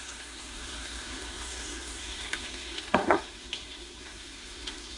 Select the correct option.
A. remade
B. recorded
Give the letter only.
A